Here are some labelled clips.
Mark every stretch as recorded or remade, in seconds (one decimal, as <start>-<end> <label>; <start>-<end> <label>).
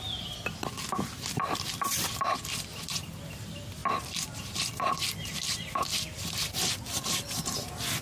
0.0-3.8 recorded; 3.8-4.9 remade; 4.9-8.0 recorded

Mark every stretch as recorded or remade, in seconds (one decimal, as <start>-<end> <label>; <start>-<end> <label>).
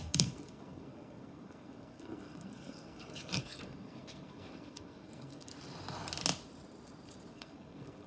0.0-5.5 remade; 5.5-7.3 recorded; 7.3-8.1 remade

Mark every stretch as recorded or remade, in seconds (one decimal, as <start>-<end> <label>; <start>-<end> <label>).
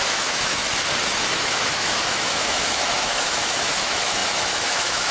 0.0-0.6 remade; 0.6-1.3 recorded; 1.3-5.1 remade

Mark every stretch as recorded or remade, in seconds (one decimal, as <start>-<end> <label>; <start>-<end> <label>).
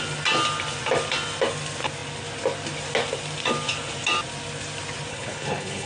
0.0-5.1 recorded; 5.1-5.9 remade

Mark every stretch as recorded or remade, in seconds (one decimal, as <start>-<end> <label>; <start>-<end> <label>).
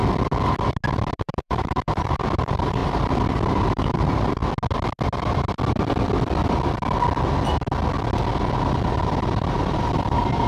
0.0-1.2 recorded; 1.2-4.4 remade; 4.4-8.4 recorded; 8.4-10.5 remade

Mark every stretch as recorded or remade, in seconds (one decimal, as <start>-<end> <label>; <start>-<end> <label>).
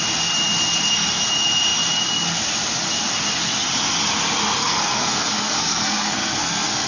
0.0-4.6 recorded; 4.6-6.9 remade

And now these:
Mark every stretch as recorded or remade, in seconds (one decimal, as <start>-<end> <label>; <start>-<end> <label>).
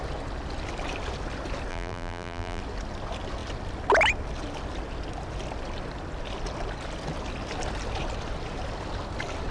0.0-1.7 recorded; 1.7-2.6 remade; 2.6-9.5 recorded